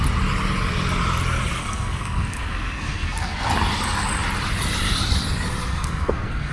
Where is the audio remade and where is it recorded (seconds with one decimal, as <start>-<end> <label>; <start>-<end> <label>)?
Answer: 0.0-1.6 recorded; 1.6-3.5 remade; 3.5-5.7 recorded; 5.7-6.5 remade